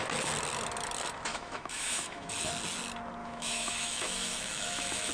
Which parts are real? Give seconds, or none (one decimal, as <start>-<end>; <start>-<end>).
0.0-1.3; 2.3-3.2